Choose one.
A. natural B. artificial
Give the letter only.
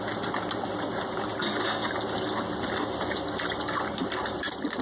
A